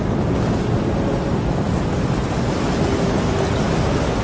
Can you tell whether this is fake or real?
real